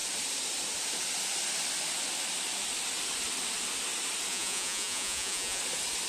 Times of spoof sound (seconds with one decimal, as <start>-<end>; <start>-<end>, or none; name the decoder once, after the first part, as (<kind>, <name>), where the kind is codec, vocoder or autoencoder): 4.3-5.6 (vocoder, Vocos)